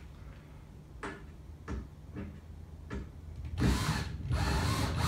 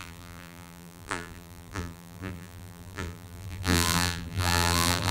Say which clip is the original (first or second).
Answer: first